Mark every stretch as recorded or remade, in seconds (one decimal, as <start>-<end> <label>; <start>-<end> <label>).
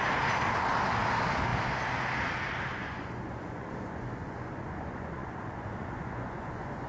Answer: 0.0-2.7 recorded; 2.7-6.9 remade